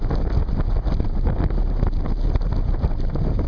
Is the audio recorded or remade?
recorded